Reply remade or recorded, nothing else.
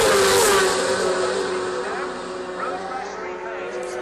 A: recorded